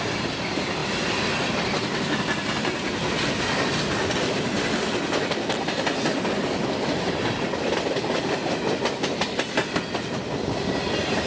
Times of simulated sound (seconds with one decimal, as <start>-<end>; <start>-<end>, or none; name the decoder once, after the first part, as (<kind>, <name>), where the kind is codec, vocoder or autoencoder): none